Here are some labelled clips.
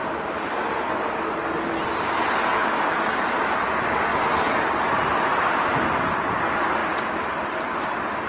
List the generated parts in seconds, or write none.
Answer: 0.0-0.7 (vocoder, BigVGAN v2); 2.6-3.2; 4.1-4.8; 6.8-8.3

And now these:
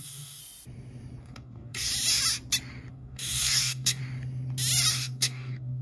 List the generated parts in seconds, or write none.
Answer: 0.0-0.4 (codec, DAC); 1.2-1.9; 2.9-4.0; 4.9-5.8